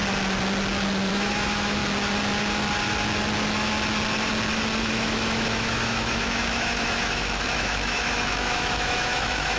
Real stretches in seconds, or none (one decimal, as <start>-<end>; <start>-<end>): 0.0-1.1; 1.8-4.8